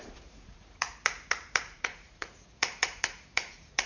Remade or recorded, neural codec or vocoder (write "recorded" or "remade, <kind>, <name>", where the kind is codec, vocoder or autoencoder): remade, vocoder, Vocos